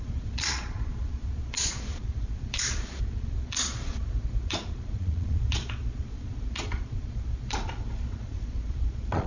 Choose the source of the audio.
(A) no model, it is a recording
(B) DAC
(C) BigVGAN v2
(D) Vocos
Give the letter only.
D